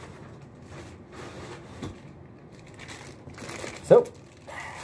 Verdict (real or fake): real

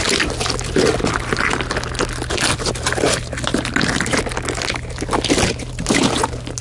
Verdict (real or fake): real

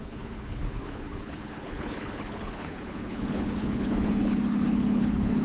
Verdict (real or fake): fake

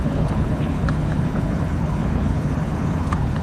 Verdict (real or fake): fake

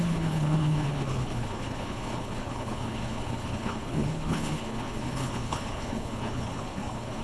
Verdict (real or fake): fake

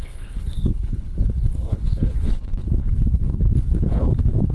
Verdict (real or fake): fake